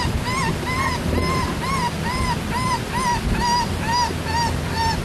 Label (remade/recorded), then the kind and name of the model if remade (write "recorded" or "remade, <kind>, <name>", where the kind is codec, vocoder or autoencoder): recorded